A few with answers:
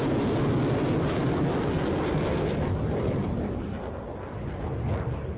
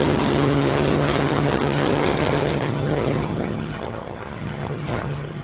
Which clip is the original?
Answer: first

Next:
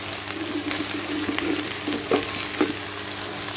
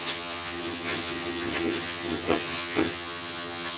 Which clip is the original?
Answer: first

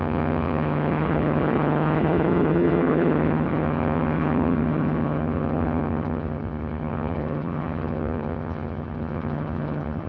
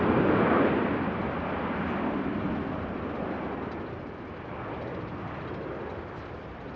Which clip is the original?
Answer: second